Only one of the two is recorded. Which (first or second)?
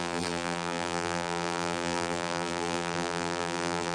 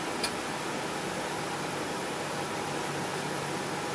second